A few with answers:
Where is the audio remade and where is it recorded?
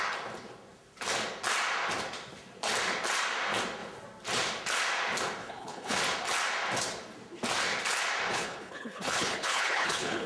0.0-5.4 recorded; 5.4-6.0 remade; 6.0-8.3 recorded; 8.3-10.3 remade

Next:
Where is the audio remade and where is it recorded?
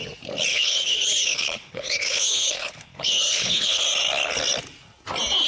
0.0-0.5 recorded; 0.5-3.8 remade; 3.8-5.5 recorded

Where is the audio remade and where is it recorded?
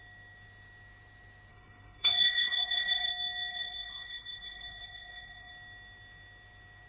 0.0-1.5 recorded; 1.5-3.1 remade; 3.1-3.5 recorded; 3.5-5.5 remade; 5.5-6.9 recorded